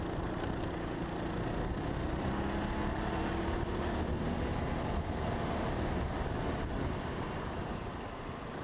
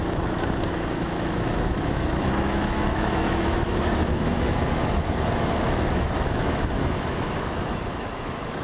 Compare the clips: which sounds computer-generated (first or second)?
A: second